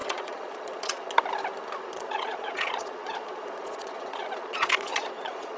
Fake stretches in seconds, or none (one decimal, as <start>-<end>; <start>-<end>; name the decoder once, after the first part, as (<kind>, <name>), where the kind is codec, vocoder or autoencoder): 0.0-1.2 (vocoder, Vocos); 1.8-5.6